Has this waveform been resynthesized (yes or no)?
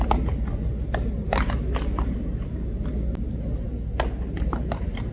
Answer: no